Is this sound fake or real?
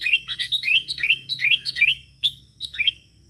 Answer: fake